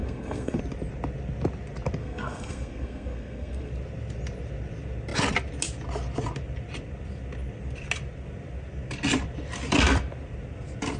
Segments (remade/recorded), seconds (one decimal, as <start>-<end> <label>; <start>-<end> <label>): 0.0-0.6 remade; 0.6-2.0 recorded; 2.0-3.7 remade; 3.7-11.0 recorded